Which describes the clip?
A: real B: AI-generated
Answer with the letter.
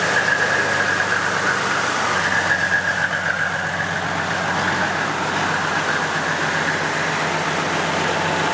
A